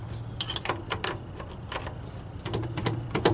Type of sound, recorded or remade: recorded